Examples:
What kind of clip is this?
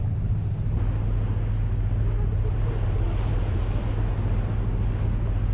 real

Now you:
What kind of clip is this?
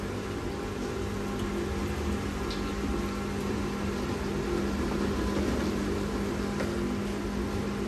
real